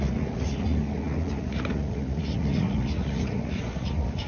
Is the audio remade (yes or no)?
yes